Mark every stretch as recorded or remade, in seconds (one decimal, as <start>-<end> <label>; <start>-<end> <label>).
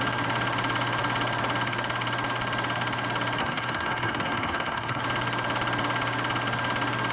0.0-3.4 recorded; 3.4-5.0 remade; 5.0-7.1 recorded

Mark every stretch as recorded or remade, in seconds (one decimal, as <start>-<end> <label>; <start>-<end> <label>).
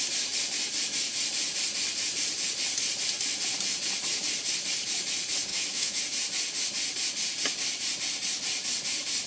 0.0-5.5 recorded; 5.5-6.0 remade; 6.0-9.3 recorded